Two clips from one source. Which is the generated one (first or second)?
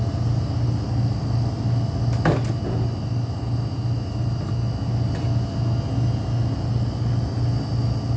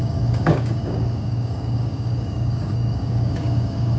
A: second